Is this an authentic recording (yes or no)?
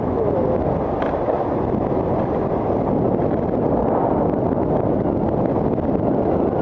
yes